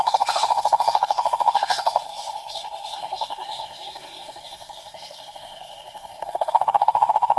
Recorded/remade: remade